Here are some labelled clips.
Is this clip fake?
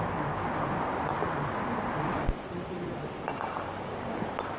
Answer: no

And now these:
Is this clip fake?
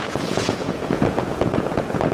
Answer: yes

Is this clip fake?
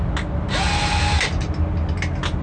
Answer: no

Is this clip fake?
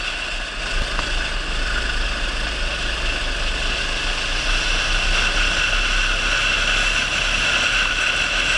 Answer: no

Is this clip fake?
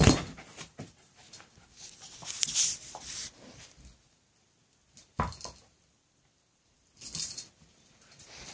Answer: no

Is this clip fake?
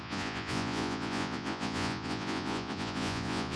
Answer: yes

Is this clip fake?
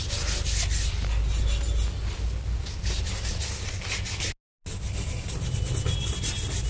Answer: no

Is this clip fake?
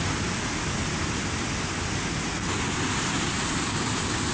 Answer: no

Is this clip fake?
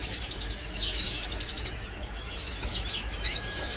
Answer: yes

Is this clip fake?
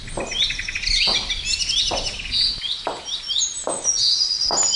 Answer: no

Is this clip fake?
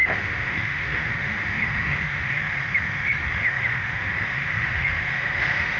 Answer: yes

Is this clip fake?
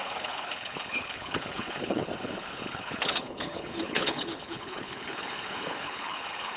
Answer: yes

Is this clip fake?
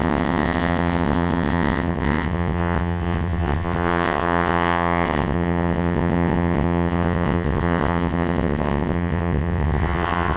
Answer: yes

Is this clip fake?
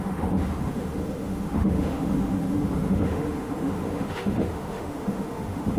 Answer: yes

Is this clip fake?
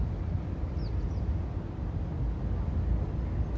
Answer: no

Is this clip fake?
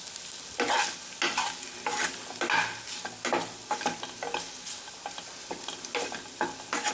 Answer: no